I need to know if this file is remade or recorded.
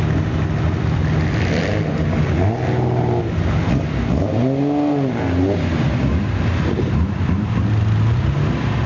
recorded